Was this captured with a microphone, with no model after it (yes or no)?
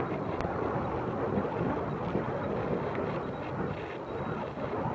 yes